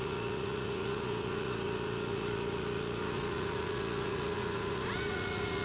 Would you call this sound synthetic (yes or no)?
yes